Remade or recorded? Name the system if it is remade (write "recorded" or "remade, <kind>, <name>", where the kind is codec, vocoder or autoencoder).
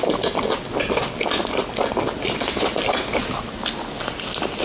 recorded